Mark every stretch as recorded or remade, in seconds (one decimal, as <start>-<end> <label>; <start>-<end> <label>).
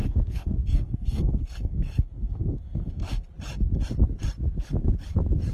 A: 0.0-3.3 remade; 3.3-5.5 recorded